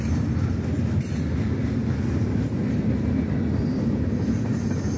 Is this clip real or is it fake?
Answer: real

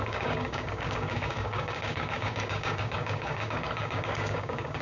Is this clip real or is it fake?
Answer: fake